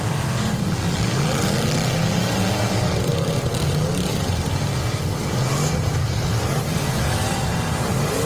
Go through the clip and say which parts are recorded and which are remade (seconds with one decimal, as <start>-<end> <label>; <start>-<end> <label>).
0.0-8.3 recorded